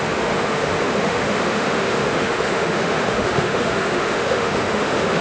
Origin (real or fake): fake